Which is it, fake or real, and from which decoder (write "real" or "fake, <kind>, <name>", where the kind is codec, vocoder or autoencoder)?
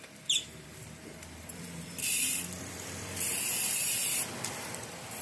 fake, vocoder, BigVGAN v2